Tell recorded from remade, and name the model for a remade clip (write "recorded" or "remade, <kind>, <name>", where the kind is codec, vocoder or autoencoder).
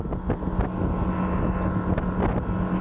recorded